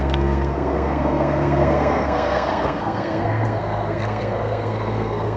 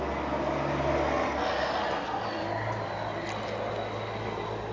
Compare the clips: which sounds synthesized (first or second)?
first